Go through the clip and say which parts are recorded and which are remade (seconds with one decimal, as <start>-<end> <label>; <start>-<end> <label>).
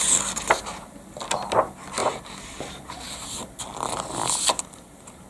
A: 0.0-5.3 recorded